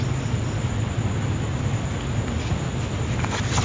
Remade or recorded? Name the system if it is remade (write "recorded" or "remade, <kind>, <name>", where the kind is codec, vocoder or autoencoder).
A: recorded